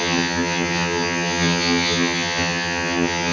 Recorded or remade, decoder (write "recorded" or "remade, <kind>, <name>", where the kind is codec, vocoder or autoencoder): remade, vocoder, HiFi-GAN